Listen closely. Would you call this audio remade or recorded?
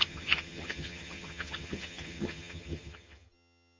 remade